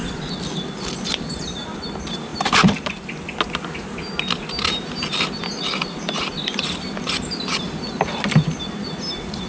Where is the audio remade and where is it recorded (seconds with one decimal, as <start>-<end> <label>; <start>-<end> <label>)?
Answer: 0.0-9.5 recorded